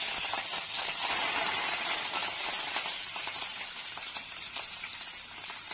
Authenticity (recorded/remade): remade